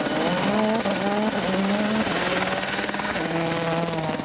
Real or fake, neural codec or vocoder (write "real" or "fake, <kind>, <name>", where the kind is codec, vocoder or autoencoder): real